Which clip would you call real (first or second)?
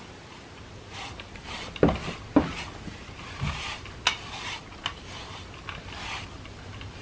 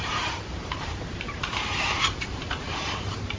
first